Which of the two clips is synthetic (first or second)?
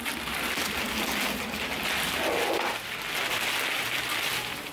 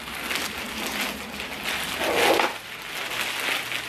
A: first